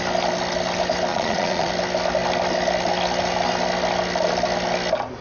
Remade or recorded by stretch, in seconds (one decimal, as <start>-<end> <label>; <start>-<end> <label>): 0.0-1.1 recorded; 1.1-1.7 remade; 1.7-5.2 recorded